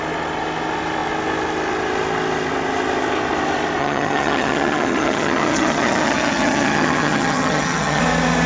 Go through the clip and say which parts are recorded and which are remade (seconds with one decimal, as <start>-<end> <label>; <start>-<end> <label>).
0.0-3.8 recorded; 3.8-8.0 remade; 8.0-8.5 recorded